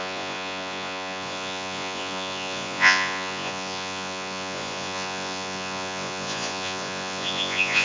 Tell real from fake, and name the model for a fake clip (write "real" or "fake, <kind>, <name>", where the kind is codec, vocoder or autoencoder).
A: fake, vocoder, Vocos